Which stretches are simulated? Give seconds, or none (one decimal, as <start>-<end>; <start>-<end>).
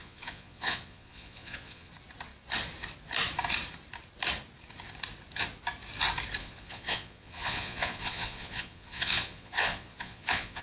0.0-1.9; 6.4-10.6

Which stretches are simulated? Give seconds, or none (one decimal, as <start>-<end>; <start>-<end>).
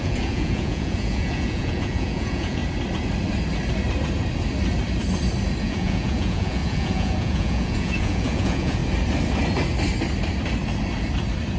0.0-2.6; 5.6-8.8